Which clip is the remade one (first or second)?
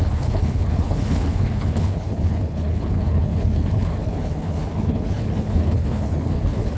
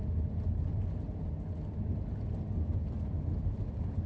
first